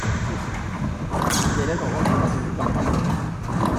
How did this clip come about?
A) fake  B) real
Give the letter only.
A